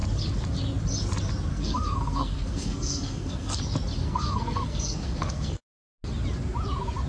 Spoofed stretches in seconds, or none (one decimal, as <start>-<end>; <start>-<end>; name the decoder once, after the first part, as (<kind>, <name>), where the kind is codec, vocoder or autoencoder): 1.5-3.6 (codec, SNAC); 4.0-5.6